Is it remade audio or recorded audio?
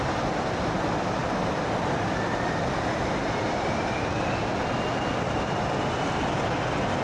recorded